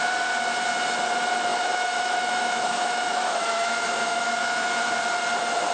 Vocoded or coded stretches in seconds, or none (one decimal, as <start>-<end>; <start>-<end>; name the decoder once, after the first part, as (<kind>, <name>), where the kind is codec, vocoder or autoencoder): 1.5-4.9 (autoencoder, DAC-VAE)